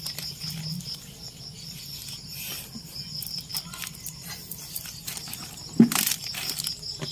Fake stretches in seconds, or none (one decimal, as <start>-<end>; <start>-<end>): none